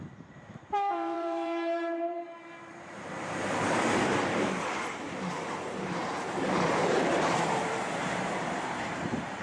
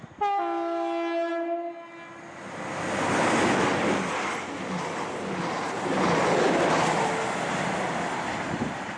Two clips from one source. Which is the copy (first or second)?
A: first